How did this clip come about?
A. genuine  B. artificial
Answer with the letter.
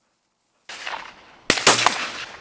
A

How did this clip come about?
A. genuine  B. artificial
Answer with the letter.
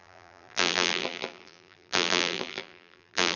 B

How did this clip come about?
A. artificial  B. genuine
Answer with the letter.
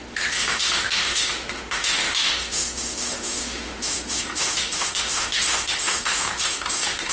A